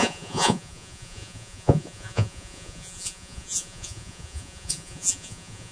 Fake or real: fake